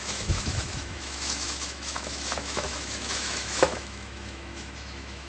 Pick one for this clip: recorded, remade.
remade